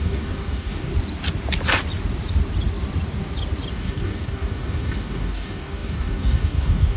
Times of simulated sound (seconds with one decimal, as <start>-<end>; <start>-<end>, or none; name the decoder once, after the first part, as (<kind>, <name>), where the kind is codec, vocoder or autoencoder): 0.0-0.9 (codec, DAC); 3.7-7.0